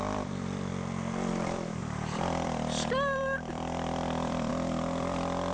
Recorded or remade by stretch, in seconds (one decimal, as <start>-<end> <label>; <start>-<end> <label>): 0.0-0.7 remade; 0.7-1.3 recorded; 1.3-5.5 remade